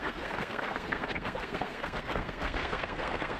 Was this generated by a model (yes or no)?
yes